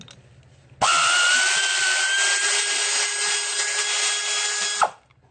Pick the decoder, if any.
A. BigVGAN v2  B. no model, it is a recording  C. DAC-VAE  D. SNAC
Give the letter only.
B